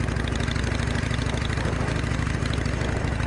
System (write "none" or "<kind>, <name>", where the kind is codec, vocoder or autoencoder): none